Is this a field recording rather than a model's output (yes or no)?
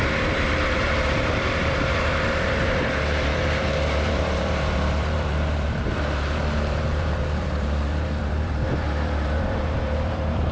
no